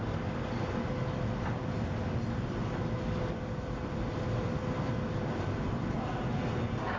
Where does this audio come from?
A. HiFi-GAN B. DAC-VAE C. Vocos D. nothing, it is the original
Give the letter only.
D